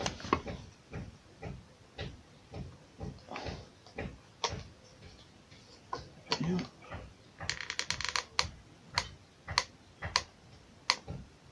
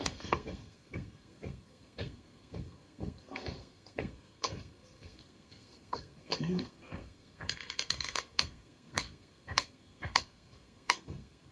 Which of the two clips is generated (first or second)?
second